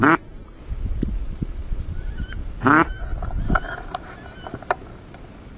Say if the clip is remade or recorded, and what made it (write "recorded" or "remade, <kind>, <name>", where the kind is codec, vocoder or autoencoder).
recorded